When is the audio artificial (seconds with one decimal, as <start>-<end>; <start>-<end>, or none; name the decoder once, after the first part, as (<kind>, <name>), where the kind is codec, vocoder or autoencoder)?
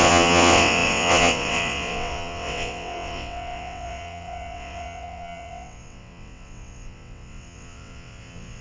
0.0-8.6 (vocoder, WaveNeXt)